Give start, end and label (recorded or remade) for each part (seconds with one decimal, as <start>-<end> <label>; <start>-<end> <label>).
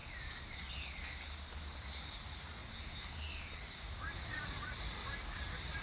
0.0-2.1 recorded; 2.1-2.6 remade; 2.6-3.7 recorded; 3.7-5.0 remade; 5.0-5.8 recorded